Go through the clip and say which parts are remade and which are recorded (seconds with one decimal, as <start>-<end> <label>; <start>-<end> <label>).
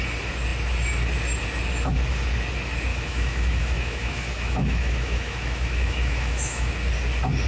0.0-2.9 recorded; 2.9-6.7 remade; 6.7-7.5 recorded